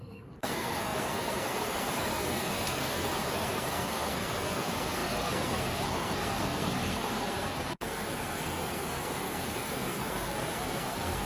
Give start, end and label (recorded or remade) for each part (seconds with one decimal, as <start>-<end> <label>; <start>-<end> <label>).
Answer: 0.0-11.3 remade